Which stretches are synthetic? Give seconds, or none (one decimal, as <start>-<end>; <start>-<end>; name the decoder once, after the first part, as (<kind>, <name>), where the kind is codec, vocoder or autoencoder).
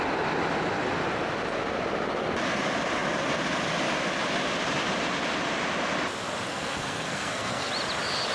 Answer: 6.5-7.7 (codec, SNAC)